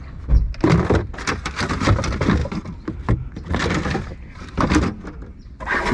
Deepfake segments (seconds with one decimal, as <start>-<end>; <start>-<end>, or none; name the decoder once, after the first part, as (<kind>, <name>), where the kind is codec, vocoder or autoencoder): none